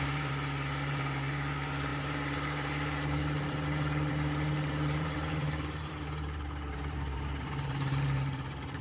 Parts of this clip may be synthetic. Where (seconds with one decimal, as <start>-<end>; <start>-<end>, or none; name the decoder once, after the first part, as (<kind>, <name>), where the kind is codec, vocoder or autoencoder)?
0.0-8.8 (vocoder, BigVGAN v2)